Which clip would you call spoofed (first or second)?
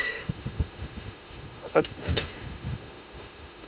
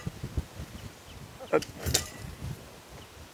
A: first